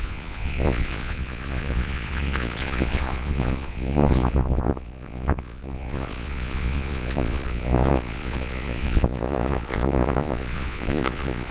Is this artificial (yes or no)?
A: yes